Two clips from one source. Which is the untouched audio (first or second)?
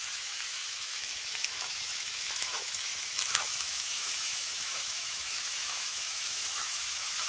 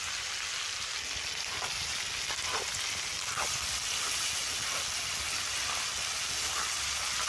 second